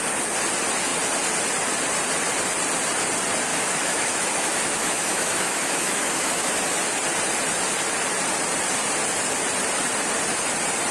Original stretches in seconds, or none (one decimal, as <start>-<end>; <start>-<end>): 0.0-3.5; 6.5-10.9